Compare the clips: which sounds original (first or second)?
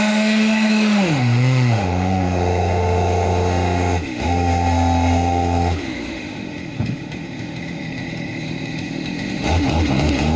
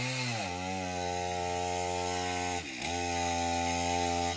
second